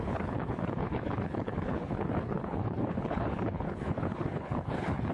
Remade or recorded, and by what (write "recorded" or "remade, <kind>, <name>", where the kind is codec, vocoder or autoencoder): remade, codec, HILCodec